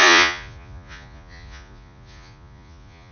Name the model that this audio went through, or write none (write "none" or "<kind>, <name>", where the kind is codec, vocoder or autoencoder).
vocoder, Vocos